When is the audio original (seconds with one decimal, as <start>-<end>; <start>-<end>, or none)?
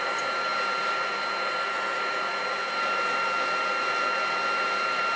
0.0-5.2